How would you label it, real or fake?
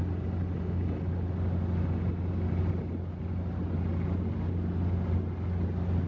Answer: real